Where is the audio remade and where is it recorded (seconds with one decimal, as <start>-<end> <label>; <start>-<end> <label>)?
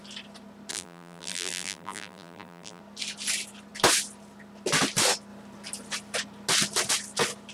0.0-0.7 recorded; 0.7-2.8 remade; 2.8-7.5 recorded